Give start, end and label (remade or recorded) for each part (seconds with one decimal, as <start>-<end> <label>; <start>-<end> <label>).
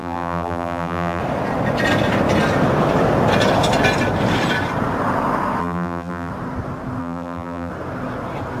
0.0-1.2 remade; 1.2-5.6 recorded; 5.6-6.3 remade; 6.3-7.0 recorded; 7.0-7.7 remade; 7.7-8.6 recorded